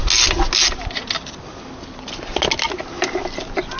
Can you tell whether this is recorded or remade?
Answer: recorded